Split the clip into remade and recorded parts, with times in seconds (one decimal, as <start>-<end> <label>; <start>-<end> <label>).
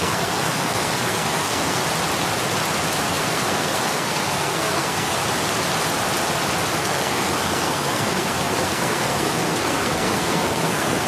0.0-1.8 remade; 1.8-3.0 recorded; 3.0-5.2 remade; 5.2-6.8 recorded; 6.8-11.1 remade